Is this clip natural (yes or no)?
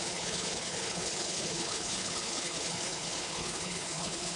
no